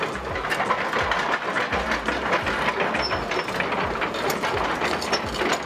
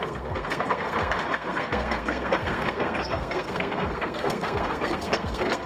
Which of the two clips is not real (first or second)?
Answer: second